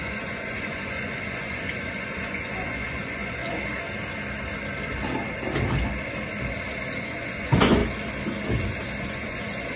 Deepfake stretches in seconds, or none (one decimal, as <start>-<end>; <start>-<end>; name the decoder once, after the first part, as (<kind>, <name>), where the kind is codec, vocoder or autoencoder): 0.0-3.4 (vocoder, Vocos); 7.0-7.8; 9.0-9.8